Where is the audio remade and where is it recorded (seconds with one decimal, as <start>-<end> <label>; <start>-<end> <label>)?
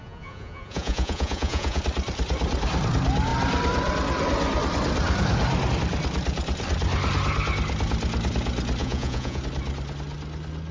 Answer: 0.0-1.8 remade; 1.8-8.8 recorded; 8.8-9.4 remade; 9.4-10.7 recorded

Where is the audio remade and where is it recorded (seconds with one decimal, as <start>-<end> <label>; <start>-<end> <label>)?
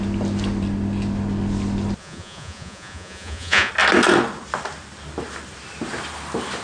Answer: 0.0-2.0 recorded; 2.0-3.7 remade; 3.7-6.6 recorded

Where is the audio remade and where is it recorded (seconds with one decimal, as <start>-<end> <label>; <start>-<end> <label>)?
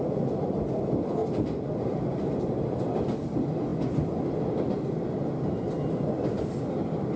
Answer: 0.0-7.2 recorded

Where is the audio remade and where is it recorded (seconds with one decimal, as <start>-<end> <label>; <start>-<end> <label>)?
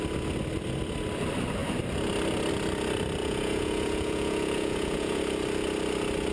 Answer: 0.0-3.2 recorded; 3.2-5.2 remade; 5.2-6.3 recorded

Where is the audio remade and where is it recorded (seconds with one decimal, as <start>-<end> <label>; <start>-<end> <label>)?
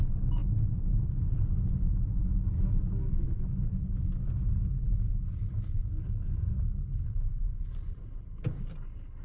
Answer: 0.0-9.2 recorded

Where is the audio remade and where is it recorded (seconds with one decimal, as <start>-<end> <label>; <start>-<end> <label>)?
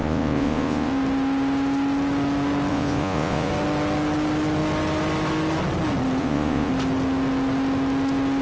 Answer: 0.0-0.9 remade; 0.9-2.7 recorded; 2.7-3.5 remade; 3.5-6.2 recorded; 6.2-6.7 remade; 6.7-8.4 recorded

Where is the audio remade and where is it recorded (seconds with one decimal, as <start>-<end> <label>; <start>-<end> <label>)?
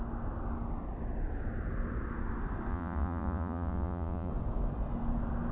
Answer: 0.0-2.7 recorded; 2.7-4.3 remade; 4.3-5.5 recorded